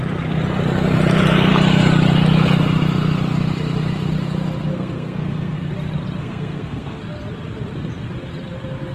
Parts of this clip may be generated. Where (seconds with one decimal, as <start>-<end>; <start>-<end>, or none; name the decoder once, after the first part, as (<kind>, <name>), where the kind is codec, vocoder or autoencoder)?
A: 4.7-5.7 (codec, SNAC); 6.2-7.0